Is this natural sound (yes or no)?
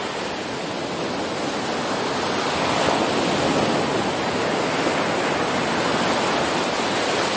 yes